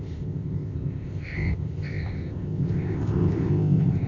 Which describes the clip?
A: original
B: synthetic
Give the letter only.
B